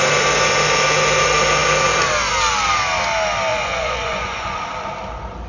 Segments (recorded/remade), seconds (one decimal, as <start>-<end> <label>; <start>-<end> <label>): 0.0-3.5 recorded; 3.5-4.6 remade; 4.6-5.5 recorded

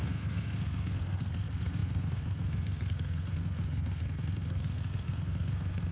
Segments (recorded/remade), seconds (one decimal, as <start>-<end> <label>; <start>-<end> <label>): 0.0-5.9 remade

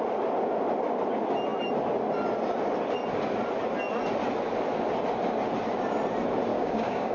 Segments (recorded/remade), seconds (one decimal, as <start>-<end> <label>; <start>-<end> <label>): 0.0-6.5 recorded; 6.5-7.1 remade